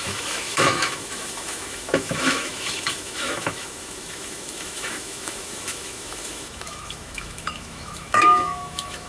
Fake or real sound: fake